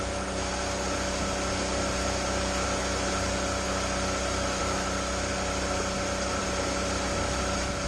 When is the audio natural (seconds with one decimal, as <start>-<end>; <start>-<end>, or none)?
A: 0.0-7.9